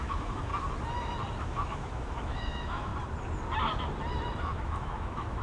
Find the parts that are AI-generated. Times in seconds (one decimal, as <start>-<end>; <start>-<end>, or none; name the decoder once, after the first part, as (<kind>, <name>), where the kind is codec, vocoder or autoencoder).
0.0-0.5 (autoencoder, DAC-VAE); 1.4-2.9; 4.4-5.4

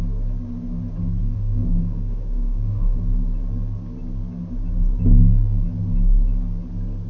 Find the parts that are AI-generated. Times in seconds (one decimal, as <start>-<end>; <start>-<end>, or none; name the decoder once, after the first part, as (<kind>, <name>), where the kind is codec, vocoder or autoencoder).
1.2-3.0 (autoencoder, DAC-VAE)

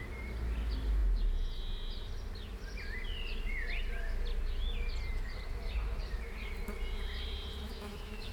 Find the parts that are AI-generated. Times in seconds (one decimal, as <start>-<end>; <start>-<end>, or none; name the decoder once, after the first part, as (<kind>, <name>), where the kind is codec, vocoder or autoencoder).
7.7-8.3 (autoencoder, DAC-VAE)

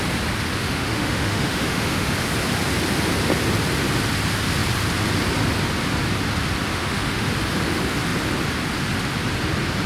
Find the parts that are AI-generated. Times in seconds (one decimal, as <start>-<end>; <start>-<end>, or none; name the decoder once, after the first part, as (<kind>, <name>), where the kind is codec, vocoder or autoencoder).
0.6-2.1 (autoencoder, DAC-VAE); 6.7-7.3

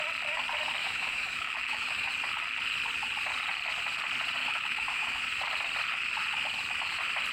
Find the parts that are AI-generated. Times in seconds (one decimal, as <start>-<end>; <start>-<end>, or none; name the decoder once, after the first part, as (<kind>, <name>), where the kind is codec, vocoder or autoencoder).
0.8-2.1 (autoencoder, DAC-VAE); 4.4-5.2

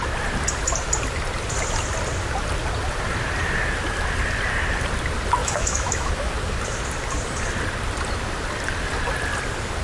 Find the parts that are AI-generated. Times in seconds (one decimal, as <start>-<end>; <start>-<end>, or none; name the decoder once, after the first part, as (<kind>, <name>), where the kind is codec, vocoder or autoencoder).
5.4-6.3 (autoencoder, DAC-VAE)

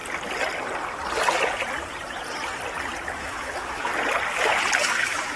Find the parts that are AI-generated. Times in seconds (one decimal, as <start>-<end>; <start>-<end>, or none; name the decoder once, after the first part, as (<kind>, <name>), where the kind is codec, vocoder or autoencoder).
3.2-3.9 (autoencoder, DAC-VAE); 4.8-5.4

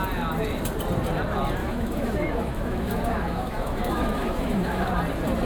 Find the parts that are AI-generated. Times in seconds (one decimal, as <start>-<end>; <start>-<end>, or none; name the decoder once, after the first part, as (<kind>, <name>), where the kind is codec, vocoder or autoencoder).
1.6-4.9 (autoencoder, DAC-VAE)